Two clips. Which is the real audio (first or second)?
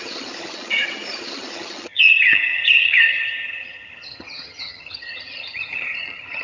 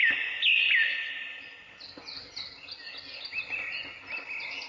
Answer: second